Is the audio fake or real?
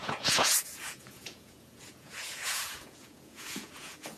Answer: fake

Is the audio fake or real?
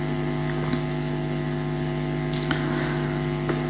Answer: real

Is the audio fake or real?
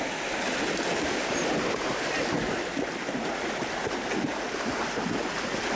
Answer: real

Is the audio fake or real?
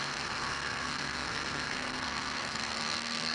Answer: fake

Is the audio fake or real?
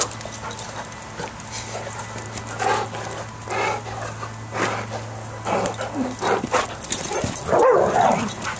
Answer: real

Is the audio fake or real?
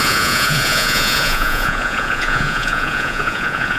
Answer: fake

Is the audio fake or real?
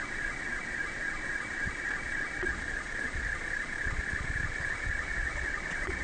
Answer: fake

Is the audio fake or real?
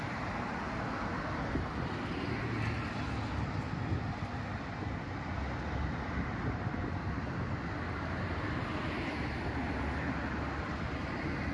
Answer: real